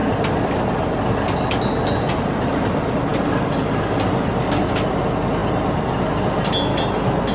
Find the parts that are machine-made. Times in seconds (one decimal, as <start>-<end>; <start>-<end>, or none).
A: none